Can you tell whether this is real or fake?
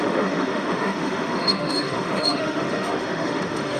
fake